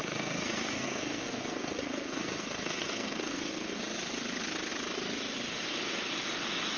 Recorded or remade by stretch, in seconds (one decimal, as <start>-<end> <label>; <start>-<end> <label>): 0.0-3.8 remade; 3.8-6.8 recorded